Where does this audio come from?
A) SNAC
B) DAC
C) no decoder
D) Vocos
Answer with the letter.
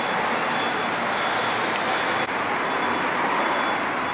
C